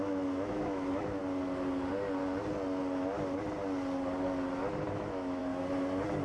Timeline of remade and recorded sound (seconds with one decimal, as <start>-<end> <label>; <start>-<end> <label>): 0.0-1.2 remade; 1.2-4.9 recorded; 4.9-5.4 remade; 5.4-6.2 recorded